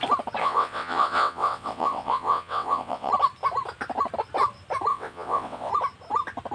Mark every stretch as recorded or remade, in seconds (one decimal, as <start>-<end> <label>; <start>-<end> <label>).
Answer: 0.0-0.4 recorded; 0.4-3.1 remade; 3.1-4.9 recorded; 4.9-5.7 remade; 5.7-6.5 recorded